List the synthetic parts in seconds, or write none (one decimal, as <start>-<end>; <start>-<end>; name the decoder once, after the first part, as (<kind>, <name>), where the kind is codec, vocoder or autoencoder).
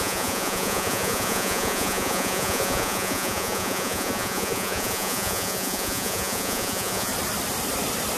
0.0-7.1 (vocoder, Vocos)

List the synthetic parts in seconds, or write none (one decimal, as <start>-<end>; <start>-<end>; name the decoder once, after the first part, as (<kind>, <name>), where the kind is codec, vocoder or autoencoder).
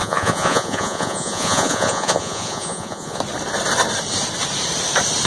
0.0-3.2 (vocoder, Vocos)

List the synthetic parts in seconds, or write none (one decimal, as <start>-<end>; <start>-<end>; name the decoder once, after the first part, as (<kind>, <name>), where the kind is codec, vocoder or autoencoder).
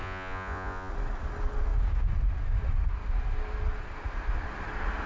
0.0-0.9 (vocoder, Vocos)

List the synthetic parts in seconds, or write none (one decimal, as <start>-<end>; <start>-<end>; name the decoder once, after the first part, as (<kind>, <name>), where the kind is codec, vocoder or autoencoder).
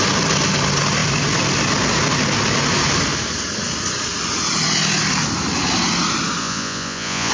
6.4-7.3 (vocoder, Vocos)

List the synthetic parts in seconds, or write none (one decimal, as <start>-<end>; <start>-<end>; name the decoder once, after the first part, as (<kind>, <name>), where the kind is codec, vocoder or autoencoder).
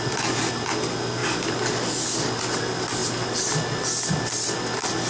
none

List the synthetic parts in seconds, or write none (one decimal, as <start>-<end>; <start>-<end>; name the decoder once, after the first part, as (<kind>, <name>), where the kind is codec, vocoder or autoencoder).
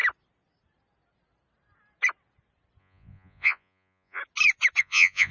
2.8-4.2 (vocoder, Vocos); 4.8-5.3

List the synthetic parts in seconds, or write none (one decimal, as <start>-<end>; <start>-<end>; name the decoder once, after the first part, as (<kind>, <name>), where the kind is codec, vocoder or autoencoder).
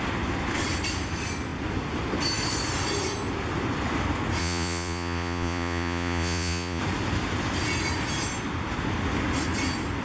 4.4-6.8 (vocoder, Vocos)